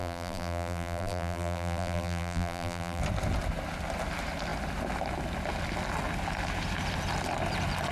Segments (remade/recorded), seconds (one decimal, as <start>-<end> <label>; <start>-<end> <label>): 0.0-3.0 remade; 3.0-7.9 recorded